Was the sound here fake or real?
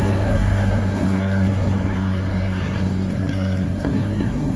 fake